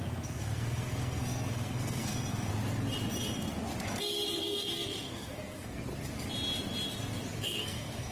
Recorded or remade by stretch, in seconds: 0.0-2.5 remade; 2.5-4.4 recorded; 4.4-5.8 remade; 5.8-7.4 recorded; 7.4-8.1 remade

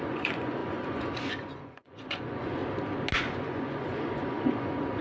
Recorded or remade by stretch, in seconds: 0.0-2.6 remade; 2.6-3.2 recorded; 3.2-5.0 remade

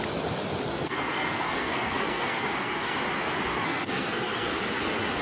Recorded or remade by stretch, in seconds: 0.0-0.7 recorded; 0.7-3.0 remade; 3.0-3.5 recorded; 3.5-4.6 remade; 4.6-5.2 recorded

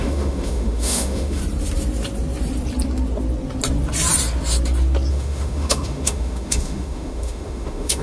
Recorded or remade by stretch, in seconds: 0.0-1.4 remade; 1.4-5.1 recorded; 5.1-8.0 remade

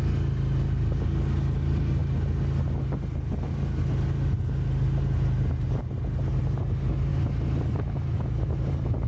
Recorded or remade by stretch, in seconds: 0.0-9.1 recorded

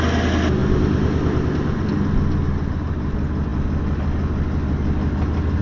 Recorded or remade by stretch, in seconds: 0.0-5.6 recorded

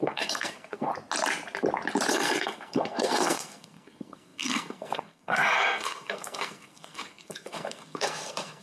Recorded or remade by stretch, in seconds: 0.0-0.9 remade; 0.9-2.1 recorded; 2.1-8.6 remade

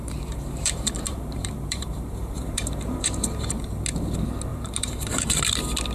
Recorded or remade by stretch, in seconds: 0.0-3.5 remade; 3.5-4.5 recorded; 4.5-5.4 remade; 5.4-5.9 recorded